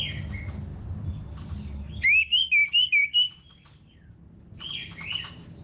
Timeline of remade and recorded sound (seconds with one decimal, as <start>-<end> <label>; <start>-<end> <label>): 0.0-5.6 recorded

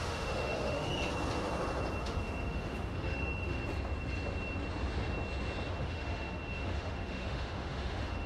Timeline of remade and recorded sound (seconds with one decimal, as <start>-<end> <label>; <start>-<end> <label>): 0.0-0.9 remade; 0.9-2.0 recorded; 2.0-3.6 remade; 3.6-5.7 recorded; 5.7-8.3 remade

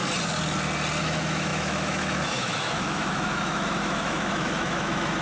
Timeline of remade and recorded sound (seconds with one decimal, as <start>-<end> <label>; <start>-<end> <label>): 0.0-1.0 recorded; 1.0-5.2 remade

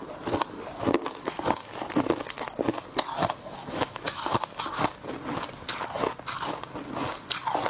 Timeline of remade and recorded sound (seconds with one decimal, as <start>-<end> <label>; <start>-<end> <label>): 0.0-3.6 recorded; 3.6-4.2 remade; 4.2-7.7 recorded

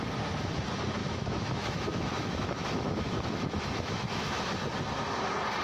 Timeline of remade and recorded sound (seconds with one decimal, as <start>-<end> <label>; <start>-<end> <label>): 0.0-1.0 recorded; 1.0-4.4 remade; 4.4-5.6 recorded

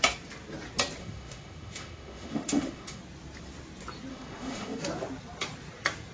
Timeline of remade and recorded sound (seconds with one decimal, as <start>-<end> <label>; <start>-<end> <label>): 0.0-1.0 recorded; 1.0-3.0 remade; 3.0-4.1 recorded; 4.1-4.8 remade; 4.8-6.1 recorded

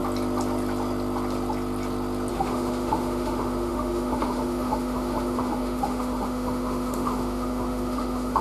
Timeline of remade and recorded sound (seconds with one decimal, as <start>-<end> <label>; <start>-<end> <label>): 0.0-2.3 recorded; 2.3-8.4 remade

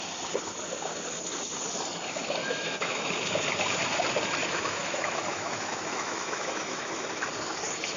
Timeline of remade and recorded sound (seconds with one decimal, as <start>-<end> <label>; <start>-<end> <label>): 0.0-2.4 recorded; 2.4-3.1 remade; 3.1-4.4 recorded; 4.4-6.9 remade; 6.9-8.0 recorded